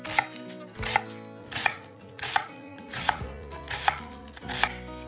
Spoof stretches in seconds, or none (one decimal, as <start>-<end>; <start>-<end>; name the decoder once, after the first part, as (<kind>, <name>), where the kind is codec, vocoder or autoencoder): 1.4-4.5 (vocoder, Vocos)